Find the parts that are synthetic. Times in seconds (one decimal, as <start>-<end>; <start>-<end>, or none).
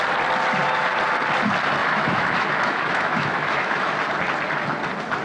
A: 1.8-3.9